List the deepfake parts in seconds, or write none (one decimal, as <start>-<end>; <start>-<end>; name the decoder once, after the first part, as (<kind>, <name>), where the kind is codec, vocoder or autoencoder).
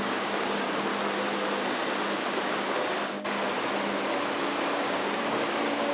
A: 0.0-0.9 (codec, DAC); 4.4-5.9